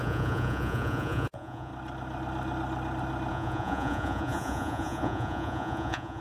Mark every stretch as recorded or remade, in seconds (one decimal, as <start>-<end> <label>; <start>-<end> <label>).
0.0-1.7 remade; 1.7-3.3 recorded; 3.3-6.2 remade